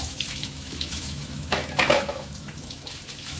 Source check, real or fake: fake